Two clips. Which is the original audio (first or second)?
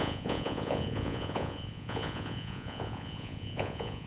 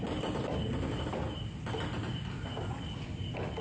second